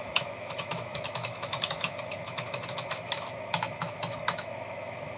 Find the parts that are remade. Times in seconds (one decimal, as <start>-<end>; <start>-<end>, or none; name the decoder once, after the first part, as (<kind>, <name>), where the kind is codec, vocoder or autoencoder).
0.0-5.2 (autoencoder, DAC-VAE)